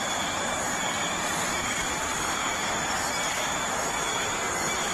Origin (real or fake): real